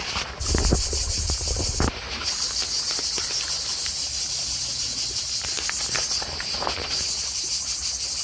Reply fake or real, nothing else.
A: real